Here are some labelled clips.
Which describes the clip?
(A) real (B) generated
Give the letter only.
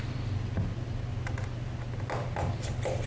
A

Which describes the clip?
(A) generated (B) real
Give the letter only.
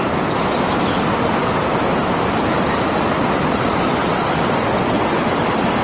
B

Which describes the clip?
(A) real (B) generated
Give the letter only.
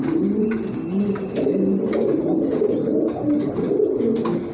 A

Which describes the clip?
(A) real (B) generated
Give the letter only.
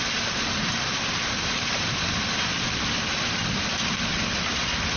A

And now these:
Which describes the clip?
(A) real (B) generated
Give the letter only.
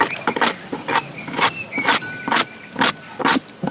A